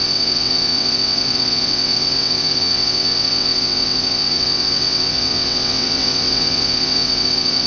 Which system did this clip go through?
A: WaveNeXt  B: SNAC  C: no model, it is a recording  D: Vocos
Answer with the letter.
A